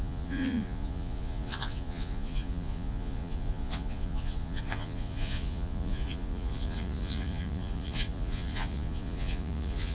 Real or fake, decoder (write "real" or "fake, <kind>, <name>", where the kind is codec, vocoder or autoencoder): fake, vocoder, Vocos